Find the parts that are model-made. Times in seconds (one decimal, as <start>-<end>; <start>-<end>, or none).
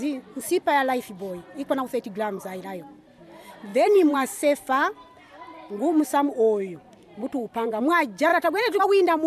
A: 3.7-7.8; 8.3-8.8